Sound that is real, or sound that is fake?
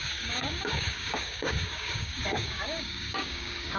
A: fake